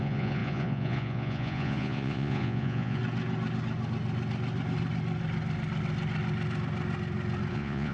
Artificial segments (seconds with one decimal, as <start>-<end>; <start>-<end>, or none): 0.0-3.0; 7.5-7.9

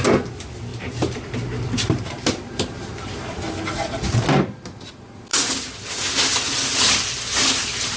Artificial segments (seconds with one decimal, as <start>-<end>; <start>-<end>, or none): 0.7-3.4; 5.3-5.9

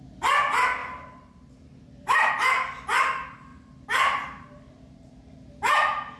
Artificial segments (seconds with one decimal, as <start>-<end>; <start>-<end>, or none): 0.8-2.3; 3.5-6.2